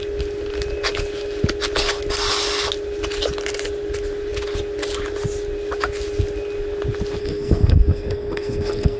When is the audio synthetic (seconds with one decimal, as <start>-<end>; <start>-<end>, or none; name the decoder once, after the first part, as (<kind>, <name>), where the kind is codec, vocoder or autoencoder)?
7.2-9.0 (codec, SNAC)